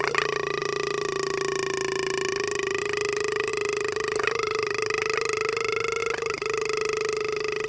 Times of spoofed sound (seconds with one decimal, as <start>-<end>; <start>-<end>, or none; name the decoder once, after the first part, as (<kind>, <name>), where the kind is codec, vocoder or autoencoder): none